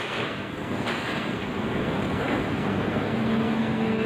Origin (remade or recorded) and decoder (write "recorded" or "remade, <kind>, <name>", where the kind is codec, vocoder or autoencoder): remade, codec, SNAC